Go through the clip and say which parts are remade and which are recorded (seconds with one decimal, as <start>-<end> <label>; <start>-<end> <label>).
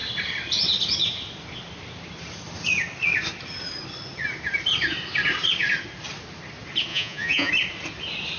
0.0-6.9 recorded; 6.9-7.5 remade; 7.5-8.4 recorded